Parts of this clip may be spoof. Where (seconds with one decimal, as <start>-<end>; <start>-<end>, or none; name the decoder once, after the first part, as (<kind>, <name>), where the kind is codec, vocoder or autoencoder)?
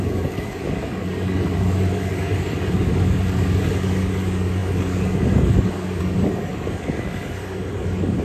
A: 0.0-8.2 (codec, DAC)